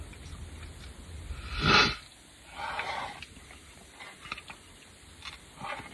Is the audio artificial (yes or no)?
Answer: no